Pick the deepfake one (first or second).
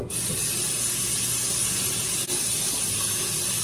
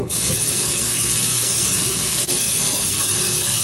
second